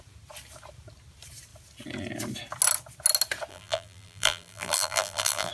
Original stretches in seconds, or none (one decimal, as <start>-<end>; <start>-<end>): 0.0-3.5